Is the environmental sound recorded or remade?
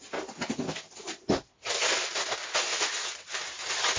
recorded